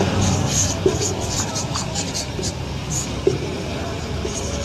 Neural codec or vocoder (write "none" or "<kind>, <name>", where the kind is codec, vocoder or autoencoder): codec, DAC